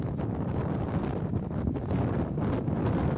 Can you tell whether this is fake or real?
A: real